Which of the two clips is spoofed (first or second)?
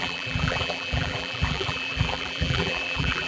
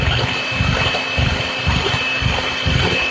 first